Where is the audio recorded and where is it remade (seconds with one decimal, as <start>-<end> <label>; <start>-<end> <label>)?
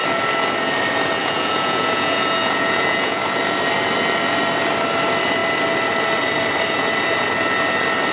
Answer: 0.0-1.2 recorded; 1.2-3.2 remade; 3.2-8.1 recorded